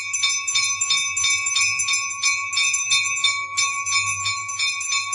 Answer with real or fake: real